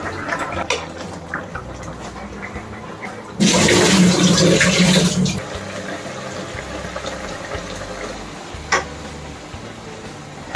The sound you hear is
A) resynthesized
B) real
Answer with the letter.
B